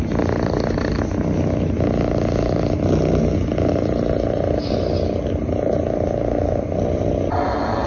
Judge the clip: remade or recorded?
recorded